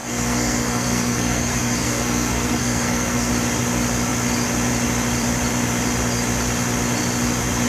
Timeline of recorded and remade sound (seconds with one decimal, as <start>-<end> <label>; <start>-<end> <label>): 0.0-3.3 remade; 3.3-7.7 recorded